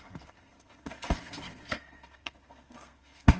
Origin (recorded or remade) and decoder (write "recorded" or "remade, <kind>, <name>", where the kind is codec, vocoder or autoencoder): remade, codec, SNAC